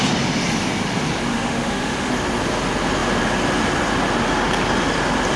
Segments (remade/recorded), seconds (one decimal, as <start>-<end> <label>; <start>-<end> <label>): 0.0-1.3 recorded; 1.3-2.1 remade; 2.1-5.4 recorded